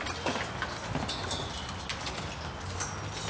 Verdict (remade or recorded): recorded